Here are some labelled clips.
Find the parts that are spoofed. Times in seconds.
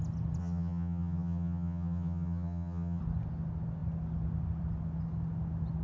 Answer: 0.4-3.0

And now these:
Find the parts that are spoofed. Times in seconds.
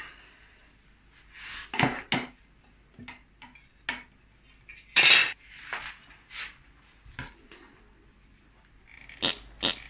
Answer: none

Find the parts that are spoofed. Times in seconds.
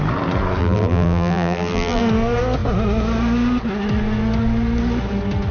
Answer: 0.6-2.0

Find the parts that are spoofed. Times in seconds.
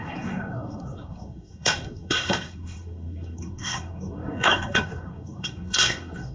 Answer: 0.0-6.3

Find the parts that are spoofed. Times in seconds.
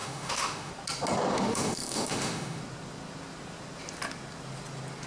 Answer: 0.0-0.7; 1.3-2.6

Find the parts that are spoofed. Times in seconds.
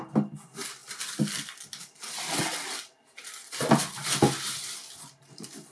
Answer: none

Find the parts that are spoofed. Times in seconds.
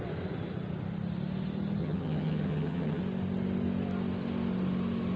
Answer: 1.8-3.0